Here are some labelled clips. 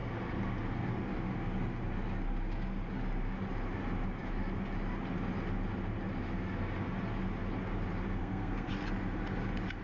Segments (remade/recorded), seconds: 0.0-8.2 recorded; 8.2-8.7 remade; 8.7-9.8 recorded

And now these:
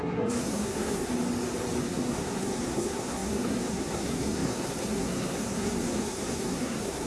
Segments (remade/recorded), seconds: 0.0-1.1 remade; 1.1-1.8 recorded; 1.8-7.1 remade